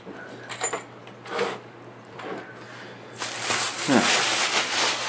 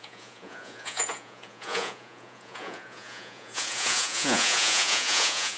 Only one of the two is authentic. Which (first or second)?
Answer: first